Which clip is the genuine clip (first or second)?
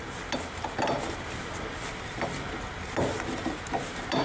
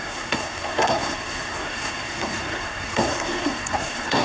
first